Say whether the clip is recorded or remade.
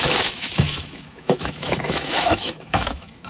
remade